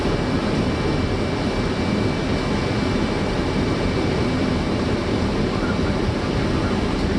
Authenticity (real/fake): real